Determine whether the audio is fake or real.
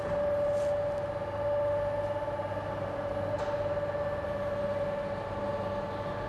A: real